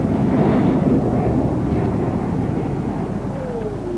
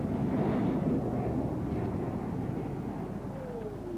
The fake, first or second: first